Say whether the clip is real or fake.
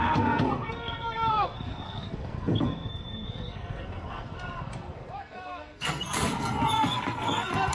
fake